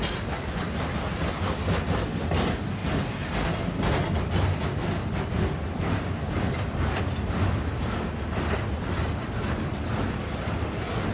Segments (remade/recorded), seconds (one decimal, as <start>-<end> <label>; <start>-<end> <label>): 0.0-5.0 recorded; 5.0-6.5 remade; 6.5-11.1 recorded